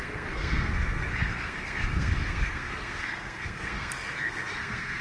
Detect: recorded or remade remade